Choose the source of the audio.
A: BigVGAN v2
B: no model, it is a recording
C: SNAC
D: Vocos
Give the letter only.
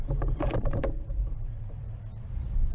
A